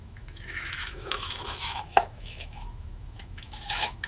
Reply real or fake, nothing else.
fake